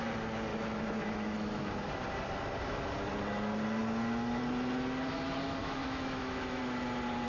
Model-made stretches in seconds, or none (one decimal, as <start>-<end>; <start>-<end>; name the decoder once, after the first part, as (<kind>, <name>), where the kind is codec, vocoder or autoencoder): 0.5-1.7 (autoencoder, DAC-VAE); 5.6-6.6